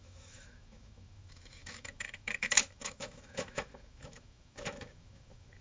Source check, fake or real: fake